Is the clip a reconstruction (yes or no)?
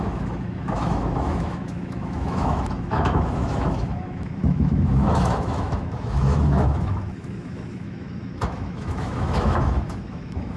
yes